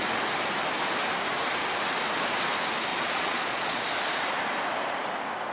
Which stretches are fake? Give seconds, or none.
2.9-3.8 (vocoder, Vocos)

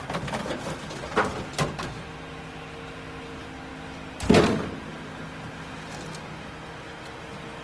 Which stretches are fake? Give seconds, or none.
none

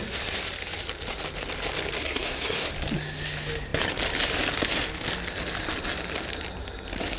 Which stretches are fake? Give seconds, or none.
2.0-2.7 (codec, SNAC)

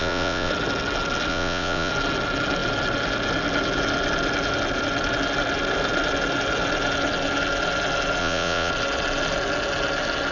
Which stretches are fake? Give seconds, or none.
0.0-0.5 (vocoder, Vocos); 1.3-1.9; 8.2-8.7